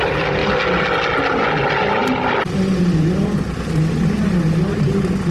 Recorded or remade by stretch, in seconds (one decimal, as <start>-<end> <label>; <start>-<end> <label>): 0.0-5.3 recorded